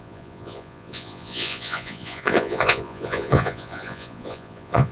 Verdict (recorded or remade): remade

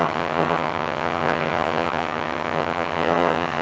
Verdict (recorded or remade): remade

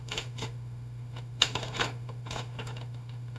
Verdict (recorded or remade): remade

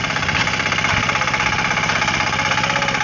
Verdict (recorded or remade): recorded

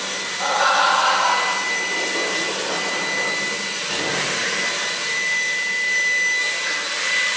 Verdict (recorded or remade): recorded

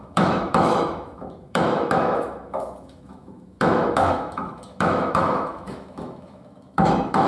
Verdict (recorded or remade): remade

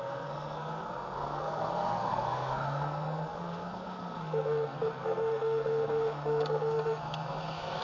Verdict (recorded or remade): remade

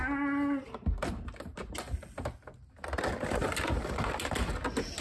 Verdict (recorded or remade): recorded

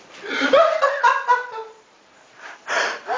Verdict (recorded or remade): remade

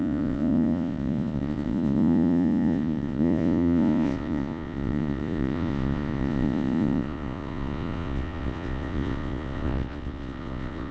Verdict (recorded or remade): remade